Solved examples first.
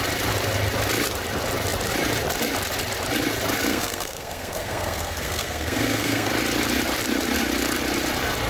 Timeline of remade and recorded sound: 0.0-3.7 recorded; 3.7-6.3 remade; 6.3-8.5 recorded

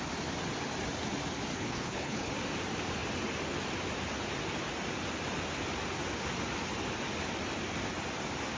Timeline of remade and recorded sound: 0.0-1.5 recorded; 1.5-2.3 remade; 2.3-8.6 recorded

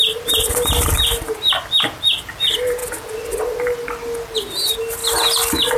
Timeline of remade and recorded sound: 0.0-5.8 recorded

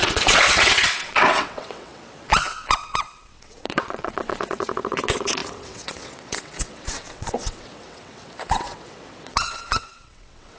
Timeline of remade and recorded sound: 0.0-10.6 remade

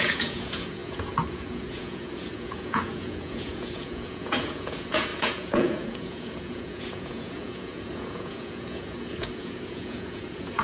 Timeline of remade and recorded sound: 0.0-10.6 remade

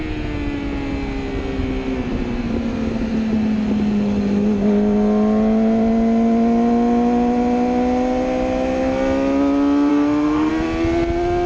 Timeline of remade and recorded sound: 0.0-9.9 recorded; 9.9-10.5 remade; 10.5-11.5 recorded

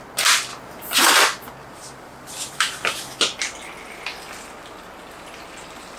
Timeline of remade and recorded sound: 0.0-1.6 recorded; 1.6-2.8 remade; 2.8-6.0 recorded